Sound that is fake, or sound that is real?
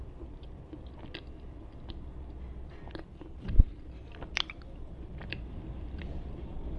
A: real